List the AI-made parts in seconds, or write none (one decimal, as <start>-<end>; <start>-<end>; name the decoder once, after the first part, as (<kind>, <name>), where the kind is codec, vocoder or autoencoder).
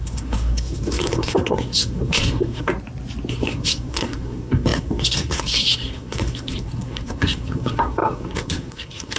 0.0-2.7 (codec, SNAC); 3.3-9.2